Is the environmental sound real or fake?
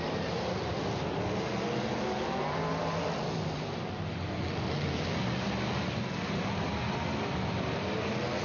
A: real